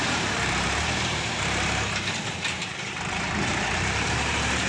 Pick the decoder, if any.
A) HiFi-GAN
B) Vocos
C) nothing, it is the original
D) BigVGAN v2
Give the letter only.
D